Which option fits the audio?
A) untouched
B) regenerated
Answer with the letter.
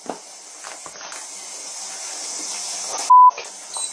A